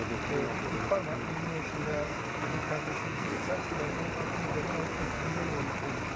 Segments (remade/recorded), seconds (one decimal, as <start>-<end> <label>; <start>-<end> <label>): 0.0-1.9 recorded; 1.9-3.5 remade; 3.5-4.9 recorded; 4.9-5.6 remade; 5.6-6.2 recorded